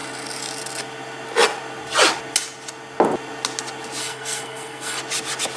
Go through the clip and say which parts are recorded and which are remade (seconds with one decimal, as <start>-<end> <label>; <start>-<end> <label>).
0.0-4.0 recorded; 4.0-5.0 remade; 5.0-5.6 recorded

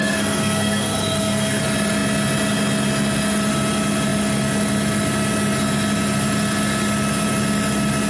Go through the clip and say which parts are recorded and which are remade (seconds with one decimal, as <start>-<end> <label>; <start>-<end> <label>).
0.0-1.6 remade; 1.6-8.1 recorded

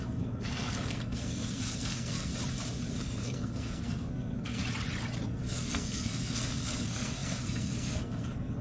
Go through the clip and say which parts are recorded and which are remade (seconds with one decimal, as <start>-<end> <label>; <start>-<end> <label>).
0.0-2.3 remade; 2.3-2.9 recorded; 2.9-4.6 remade; 4.6-5.3 recorded; 5.3-8.6 remade